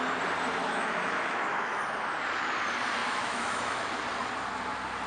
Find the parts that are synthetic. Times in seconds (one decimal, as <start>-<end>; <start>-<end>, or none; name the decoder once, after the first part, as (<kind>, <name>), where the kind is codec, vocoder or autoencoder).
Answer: 0.6-1.8 (autoencoder, DAC-VAE); 3.0-3.9